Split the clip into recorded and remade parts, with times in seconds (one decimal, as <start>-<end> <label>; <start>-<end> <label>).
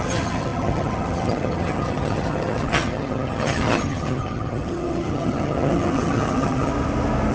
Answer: 0.0-6.7 remade; 6.7-7.3 recorded